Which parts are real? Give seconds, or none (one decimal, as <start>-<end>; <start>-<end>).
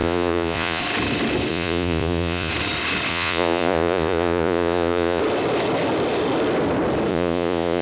0.8-1.5; 2.5-3.1; 5.2-7.1